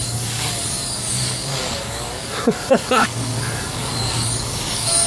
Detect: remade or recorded remade